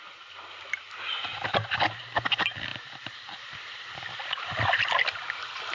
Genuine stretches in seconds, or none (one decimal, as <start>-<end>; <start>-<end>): 0.0-1.3; 2.0-2.7; 4.4-5.7